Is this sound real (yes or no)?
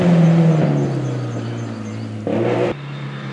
yes